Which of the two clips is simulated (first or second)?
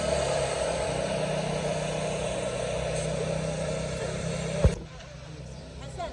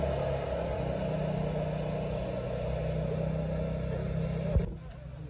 first